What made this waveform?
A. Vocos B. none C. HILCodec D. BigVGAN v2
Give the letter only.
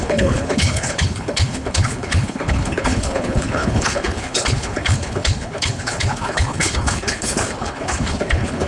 C